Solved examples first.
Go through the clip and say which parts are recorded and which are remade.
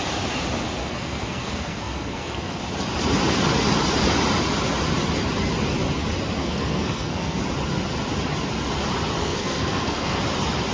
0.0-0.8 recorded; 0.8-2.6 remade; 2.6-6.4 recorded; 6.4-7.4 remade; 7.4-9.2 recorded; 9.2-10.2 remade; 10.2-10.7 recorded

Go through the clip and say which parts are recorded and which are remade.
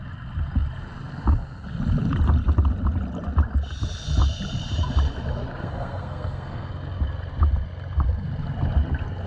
0.0-5.6 recorded; 5.6-6.7 remade; 6.7-9.3 recorded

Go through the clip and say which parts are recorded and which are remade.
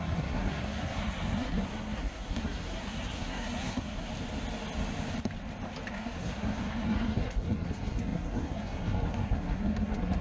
0.0-4.1 remade; 4.1-5.9 recorded; 5.9-10.2 remade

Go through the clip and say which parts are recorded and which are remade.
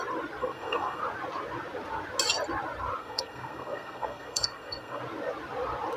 0.0-0.4 recorded; 0.4-1.0 remade; 1.0-3.0 recorded; 3.0-5.0 remade; 5.0-6.0 recorded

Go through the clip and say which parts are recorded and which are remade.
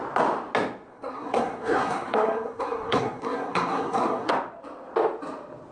0.0-0.9 recorded; 0.9-4.3 remade; 4.3-5.7 recorded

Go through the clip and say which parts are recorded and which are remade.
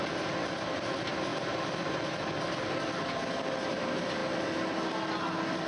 0.0-5.7 recorded